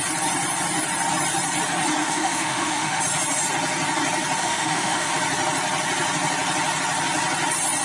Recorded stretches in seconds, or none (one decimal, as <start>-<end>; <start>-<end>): 0.0-2.0; 3.0-4.4; 5.1-7.8

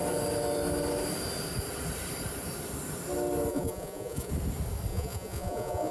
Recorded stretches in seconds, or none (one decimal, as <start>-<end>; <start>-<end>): 0.0-3.5; 4.3-4.9

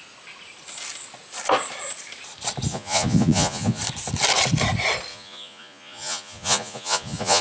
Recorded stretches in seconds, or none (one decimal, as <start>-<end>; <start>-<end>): 0.0-2.7; 3.8-5.1

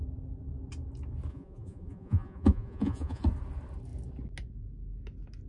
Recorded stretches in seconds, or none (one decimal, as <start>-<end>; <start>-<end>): 0.0-1.3; 3.2-5.5

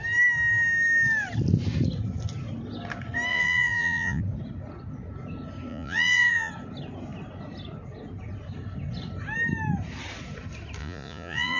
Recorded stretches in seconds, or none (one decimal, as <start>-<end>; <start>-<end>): 0.0-3.3; 4.2-5.7; 6.5-10.8

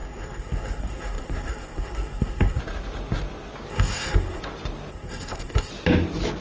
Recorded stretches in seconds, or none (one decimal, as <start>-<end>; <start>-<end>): 2.6-3.7; 4.4-4.9; 5.7-6.4

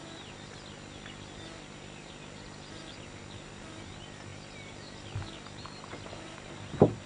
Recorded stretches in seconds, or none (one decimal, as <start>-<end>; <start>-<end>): 0.0-7.1

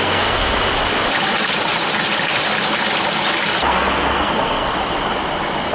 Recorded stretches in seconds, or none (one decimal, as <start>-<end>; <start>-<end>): 0.4-3.6; 4.7-5.7